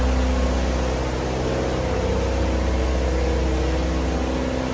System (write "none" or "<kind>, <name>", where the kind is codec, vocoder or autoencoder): none